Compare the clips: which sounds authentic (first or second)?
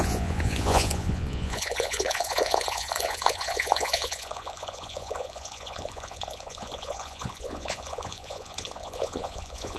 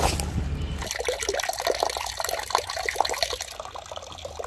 second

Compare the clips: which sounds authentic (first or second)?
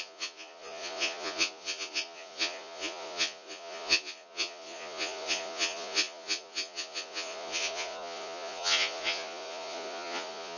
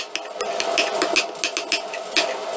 second